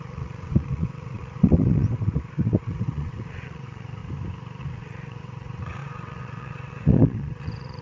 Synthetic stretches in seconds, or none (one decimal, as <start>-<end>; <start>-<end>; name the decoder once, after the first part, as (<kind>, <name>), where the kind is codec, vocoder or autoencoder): 0.0-4.0 (vocoder, WaveNeXt); 4.6-7.8